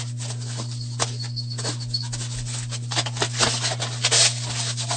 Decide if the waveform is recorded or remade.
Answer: recorded